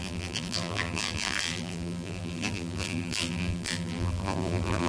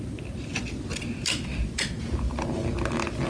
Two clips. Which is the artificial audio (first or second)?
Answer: first